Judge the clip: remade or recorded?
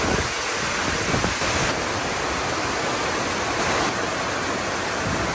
recorded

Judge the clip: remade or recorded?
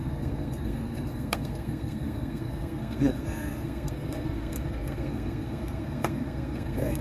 remade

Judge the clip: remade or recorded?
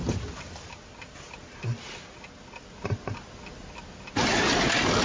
recorded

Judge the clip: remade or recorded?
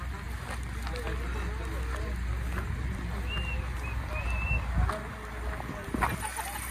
recorded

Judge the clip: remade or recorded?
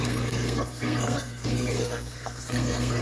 remade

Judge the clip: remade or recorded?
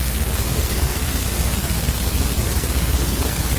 remade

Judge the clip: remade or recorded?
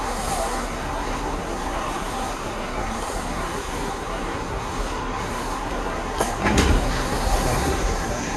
remade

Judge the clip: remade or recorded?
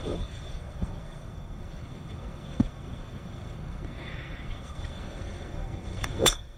remade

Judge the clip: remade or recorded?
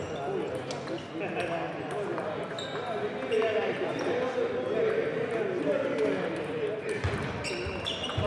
recorded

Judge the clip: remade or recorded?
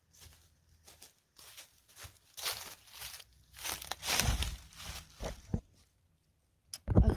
recorded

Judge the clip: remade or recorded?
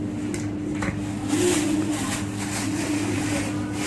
recorded